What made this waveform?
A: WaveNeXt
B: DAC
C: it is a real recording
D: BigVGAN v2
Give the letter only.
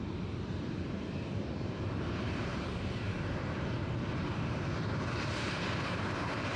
D